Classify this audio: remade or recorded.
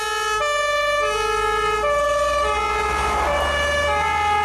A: recorded